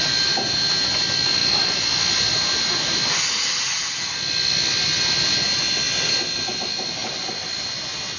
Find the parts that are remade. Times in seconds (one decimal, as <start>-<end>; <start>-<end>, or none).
none